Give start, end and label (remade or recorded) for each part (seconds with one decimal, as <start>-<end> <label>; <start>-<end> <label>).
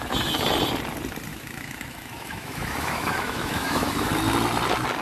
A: 0.0-1.3 recorded; 1.3-4.1 remade; 4.1-5.0 recorded